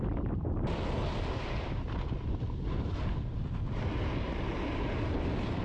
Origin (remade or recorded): recorded